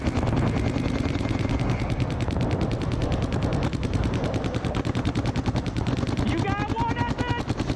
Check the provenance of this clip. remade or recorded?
recorded